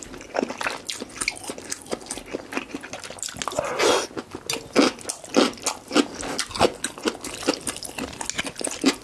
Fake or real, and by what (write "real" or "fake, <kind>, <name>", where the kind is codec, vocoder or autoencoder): real